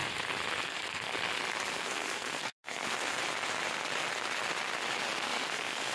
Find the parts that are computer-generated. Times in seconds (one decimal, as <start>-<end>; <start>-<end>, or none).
0.6-1.1; 1.7-3.1; 5.2-5.9